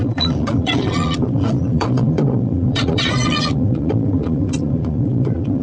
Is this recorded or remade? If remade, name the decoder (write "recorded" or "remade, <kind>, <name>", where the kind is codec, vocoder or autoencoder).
remade, vocoder, Vocos